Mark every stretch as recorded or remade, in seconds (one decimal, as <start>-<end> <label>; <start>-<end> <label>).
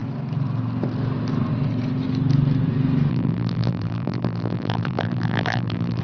0.0-3.1 recorded; 3.1-6.0 remade